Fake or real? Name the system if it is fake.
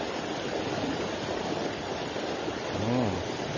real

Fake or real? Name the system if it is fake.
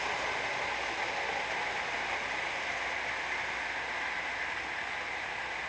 real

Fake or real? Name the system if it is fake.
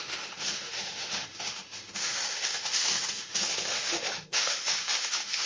fake, autoencoder, DAC-VAE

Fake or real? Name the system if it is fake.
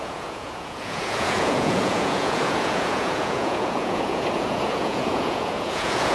fake, vocoder, Vocos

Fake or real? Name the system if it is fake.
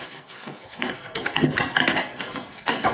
fake, codec, SNAC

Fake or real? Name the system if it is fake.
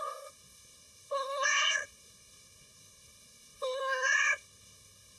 fake, codec, SNAC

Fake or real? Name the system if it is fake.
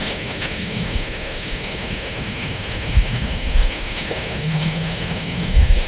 fake, autoencoder, DAC-VAE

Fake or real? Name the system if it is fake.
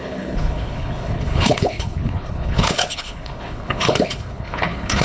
fake, codec, HILCodec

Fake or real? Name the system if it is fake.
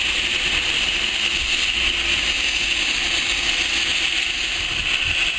real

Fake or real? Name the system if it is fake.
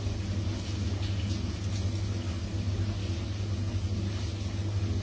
real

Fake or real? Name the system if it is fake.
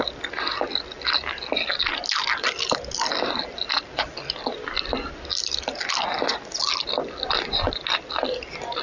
real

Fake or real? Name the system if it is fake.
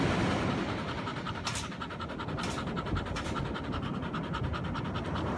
real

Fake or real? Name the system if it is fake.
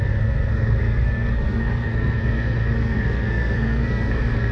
fake, codec, SNAC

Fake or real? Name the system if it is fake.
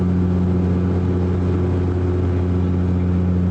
real